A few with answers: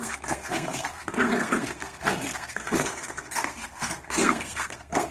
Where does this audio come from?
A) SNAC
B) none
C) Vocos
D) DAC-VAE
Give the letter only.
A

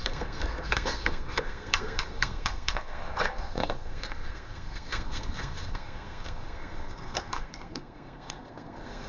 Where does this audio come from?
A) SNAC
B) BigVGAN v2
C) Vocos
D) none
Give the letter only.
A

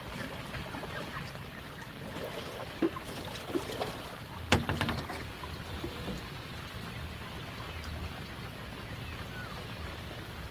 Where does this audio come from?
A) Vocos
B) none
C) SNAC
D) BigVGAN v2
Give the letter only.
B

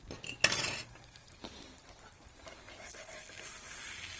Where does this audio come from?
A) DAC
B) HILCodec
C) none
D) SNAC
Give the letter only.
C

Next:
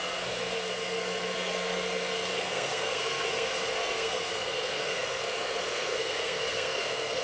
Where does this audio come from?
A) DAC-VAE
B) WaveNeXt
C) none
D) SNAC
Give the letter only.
D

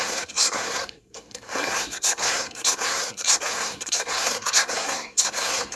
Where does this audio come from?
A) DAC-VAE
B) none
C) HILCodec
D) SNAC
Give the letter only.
D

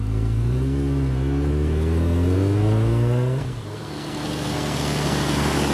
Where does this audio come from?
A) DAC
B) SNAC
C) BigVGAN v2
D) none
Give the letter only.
B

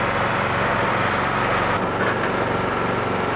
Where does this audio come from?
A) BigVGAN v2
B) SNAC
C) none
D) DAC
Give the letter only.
C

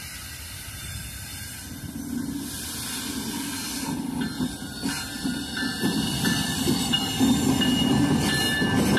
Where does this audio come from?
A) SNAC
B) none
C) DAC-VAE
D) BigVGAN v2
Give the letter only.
B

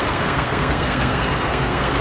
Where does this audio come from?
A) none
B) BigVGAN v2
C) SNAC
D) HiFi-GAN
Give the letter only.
C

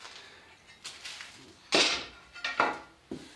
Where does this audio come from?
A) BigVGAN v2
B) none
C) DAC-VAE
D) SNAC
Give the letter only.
B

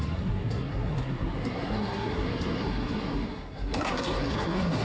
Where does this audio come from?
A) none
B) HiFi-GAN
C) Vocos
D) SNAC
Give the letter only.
D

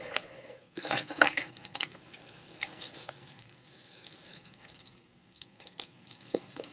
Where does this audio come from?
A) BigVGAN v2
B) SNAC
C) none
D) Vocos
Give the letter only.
B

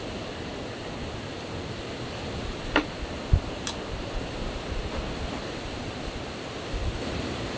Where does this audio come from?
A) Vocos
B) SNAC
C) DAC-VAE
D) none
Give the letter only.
D